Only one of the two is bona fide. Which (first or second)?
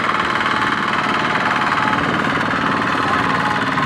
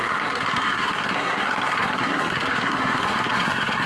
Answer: first